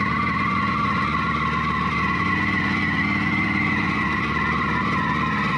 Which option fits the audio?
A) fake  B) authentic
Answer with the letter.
A